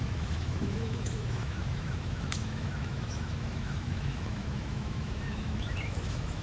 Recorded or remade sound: remade